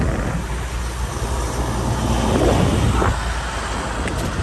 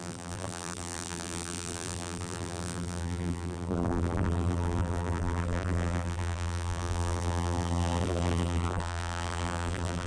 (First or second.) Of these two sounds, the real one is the first